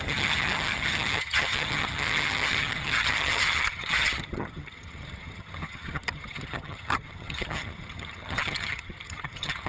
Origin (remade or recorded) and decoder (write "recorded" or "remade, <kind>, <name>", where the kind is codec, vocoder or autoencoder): remade, vocoder, HiFi-GAN